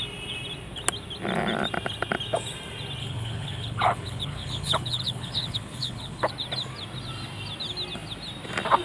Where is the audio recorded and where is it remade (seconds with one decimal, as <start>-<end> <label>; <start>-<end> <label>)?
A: 0.0-3.0 recorded; 3.0-6.3 remade; 6.3-8.8 recorded